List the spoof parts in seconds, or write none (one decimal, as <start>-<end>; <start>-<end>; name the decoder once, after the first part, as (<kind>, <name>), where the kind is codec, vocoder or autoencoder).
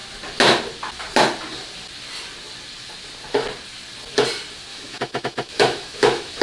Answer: 4.7-6.4 (autoencoder, DAC-VAE)